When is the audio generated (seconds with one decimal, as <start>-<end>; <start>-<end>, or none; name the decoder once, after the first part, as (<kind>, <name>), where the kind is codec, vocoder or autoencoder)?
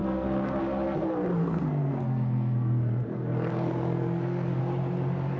0.0-0.6 (codec, SNAC); 1.4-4.6